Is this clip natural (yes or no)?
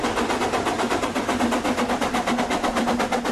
yes